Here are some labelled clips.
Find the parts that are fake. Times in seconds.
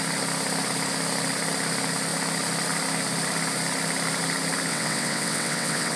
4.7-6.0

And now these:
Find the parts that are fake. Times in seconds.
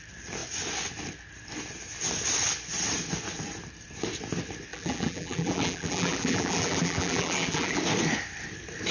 4.7-7.8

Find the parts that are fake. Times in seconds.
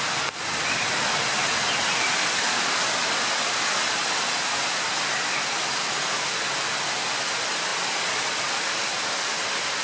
none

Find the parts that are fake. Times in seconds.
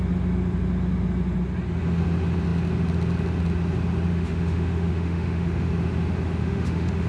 4.1-5.7; 6.4-7.1